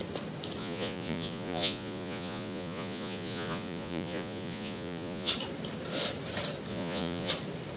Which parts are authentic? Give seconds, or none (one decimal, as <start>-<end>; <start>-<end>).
0.0-0.6; 5.3-6.7; 7.3-7.8